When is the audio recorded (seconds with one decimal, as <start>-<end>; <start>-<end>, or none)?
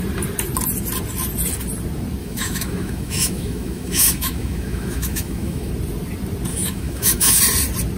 0.0-2.2; 5.7-6.5; 7.4-8.0